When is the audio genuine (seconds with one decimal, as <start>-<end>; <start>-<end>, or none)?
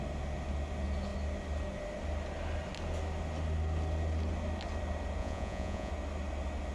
0.0-5.2; 5.9-6.7